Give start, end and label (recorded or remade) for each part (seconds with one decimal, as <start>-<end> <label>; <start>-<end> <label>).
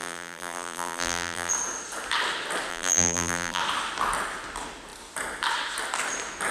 0.0-1.5 remade; 1.5-2.7 recorded; 2.7-3.6 remade; 3.6-6.5 recorded